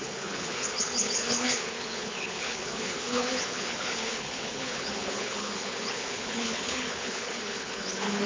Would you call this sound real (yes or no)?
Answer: no